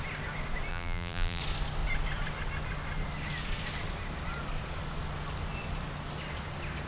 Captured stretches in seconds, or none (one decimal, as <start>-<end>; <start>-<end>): 0.0-0.7; 1.4-6.9